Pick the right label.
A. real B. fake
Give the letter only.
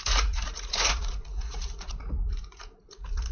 B